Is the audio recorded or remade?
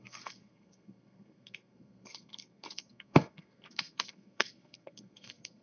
remade